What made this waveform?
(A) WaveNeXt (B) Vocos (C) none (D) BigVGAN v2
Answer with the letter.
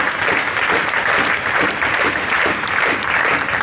D